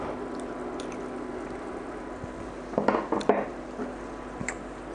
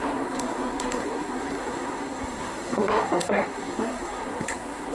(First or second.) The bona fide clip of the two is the first